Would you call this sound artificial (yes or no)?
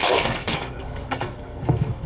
yes